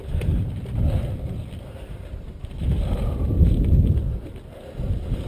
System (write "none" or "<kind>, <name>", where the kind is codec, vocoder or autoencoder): none